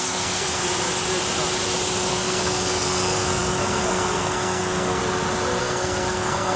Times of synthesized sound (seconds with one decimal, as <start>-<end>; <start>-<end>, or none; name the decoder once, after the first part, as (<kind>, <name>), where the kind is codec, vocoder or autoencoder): 0.0-0.6 (codec, SNAC); 2.1-5.0; 5.6-6.6